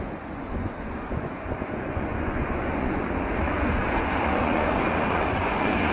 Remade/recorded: remade